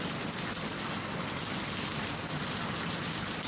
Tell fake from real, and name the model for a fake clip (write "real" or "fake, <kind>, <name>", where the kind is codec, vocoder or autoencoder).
real